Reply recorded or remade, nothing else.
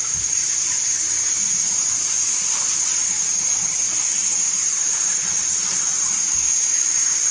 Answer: remade